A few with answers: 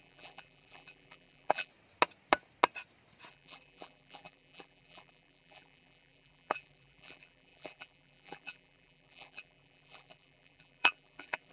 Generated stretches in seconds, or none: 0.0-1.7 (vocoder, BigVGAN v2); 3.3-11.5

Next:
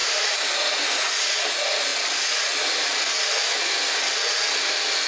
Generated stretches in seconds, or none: 0.0-0.6 (vocoder, BigVGAN v2)

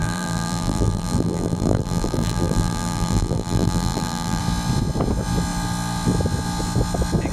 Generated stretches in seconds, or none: 0.0-4.4 (vocoder, BigVGAN v2)

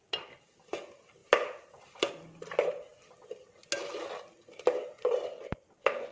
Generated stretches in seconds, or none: 1.2-2.1 (vocoder, BigVGAN v2)